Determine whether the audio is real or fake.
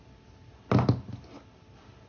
real